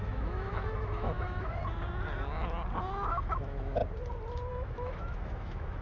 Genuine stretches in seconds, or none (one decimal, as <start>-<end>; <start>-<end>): 1.6-2.9; 3.8-4.5